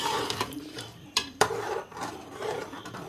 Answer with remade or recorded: remade